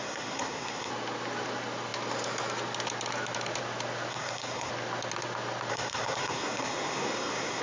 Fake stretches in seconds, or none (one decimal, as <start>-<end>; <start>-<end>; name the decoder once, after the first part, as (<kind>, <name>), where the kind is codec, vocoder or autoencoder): 0.0-0.9 (codec, SNAC); 4.1-4.7; 5.7-7.6